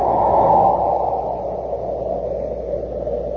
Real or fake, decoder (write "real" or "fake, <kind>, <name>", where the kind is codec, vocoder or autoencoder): real